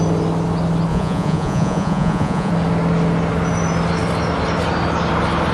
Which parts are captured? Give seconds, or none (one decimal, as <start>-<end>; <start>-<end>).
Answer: 0.0-0.9; 2.5-5.5